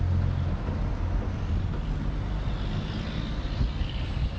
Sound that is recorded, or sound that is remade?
recorded